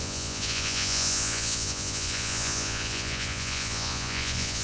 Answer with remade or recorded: remade